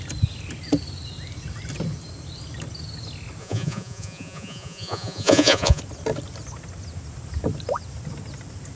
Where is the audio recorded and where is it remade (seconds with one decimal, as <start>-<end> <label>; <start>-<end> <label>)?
0.0-3.4 recorded; 3.4-5.8 remade; 5.8-8.8 recorded